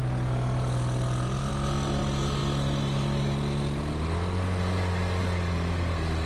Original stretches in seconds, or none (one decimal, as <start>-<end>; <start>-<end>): 0.0-6.3